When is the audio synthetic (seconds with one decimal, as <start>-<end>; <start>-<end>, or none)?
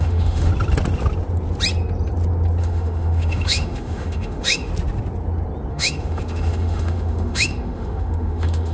0.0-0.5; 2.6-4.7; 5.7-8.7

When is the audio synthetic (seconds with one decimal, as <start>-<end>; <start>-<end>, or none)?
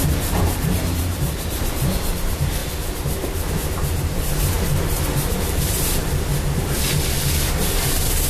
0.0-2.6; 3.5-6.3; 6.9-8.3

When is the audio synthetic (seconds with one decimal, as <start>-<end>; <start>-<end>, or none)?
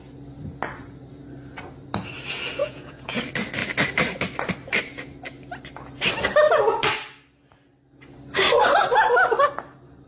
2.6-3.2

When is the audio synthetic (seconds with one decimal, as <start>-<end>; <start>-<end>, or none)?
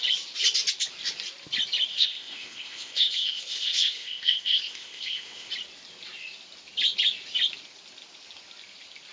1.9-5.5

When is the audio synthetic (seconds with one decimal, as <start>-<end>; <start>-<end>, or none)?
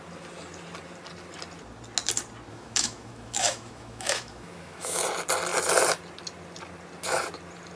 2.5-5.0